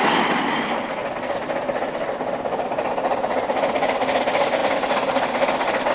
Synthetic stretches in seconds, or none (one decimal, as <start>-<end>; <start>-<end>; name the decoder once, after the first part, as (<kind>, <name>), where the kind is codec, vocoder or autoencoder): 4.6-5.9 (vocoder, BigVGAN v2)